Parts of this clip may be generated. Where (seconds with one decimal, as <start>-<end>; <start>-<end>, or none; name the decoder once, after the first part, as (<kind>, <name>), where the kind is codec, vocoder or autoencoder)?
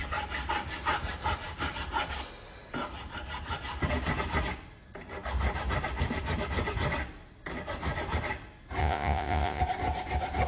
8.8-9.6 (vocoder, Vocos)